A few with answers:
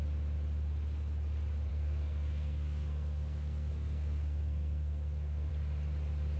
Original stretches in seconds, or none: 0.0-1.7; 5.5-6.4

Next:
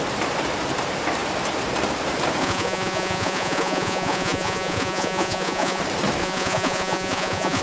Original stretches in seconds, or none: 0.0-2.4; 5.8-6.2

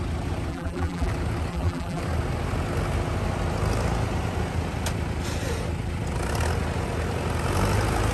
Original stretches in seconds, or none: 0.0-0.5; 1.1-1.5; 2.0-8.1

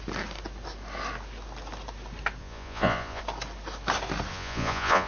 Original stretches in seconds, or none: 0.0-2.4; 3.2-4.3

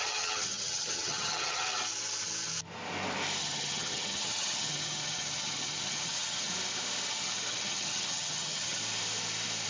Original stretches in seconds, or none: 1.7-3.4; 6.5-7.1; 8.8-9.7

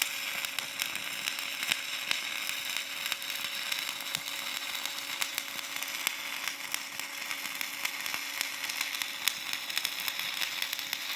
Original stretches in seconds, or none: 0.0-11.2

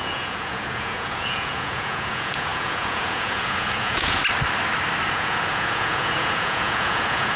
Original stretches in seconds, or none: 4.2-5.1